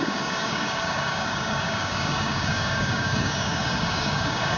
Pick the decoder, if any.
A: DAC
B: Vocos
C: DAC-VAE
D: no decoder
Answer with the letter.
A